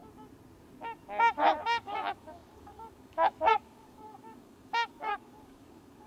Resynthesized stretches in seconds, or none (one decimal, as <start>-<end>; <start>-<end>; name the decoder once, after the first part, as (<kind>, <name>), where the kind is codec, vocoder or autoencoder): 1.6-6.1 (codec, DAC)